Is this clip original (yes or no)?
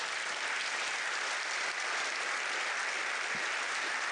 yes